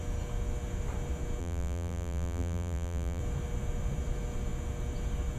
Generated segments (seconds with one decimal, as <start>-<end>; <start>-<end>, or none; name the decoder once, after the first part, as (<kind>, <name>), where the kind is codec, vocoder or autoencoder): 1.4-3.2 (vocoder, BigVGAN v2)